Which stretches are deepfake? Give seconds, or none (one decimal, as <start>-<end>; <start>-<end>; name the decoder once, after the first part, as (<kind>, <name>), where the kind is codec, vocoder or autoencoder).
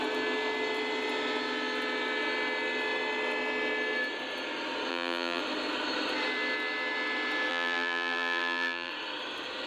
4.9-5.4 (vocoder, BigVGAN v2); 7.5-8.9